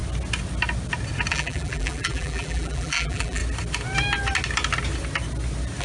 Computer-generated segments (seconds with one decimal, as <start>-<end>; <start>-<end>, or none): 1.3-3.4